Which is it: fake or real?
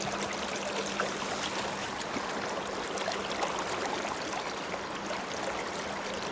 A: real